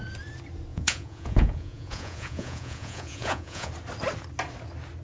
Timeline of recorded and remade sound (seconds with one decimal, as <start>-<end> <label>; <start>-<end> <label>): 0.0-0.7 recorded; 0.7-3.7 remade; 3.7-5.0 recorded